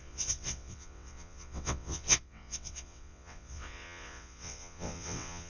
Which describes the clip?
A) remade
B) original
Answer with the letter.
A